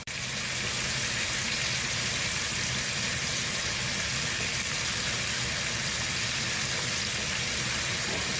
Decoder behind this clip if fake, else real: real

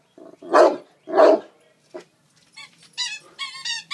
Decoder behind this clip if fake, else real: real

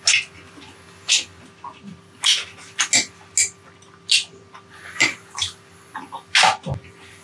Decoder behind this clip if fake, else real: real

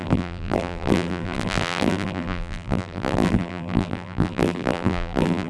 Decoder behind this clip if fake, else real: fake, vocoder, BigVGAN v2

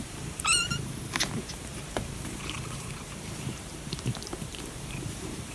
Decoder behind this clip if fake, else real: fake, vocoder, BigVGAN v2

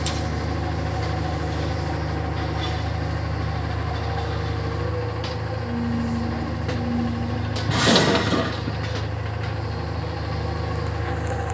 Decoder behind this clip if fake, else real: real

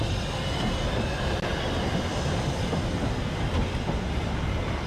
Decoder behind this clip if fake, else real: real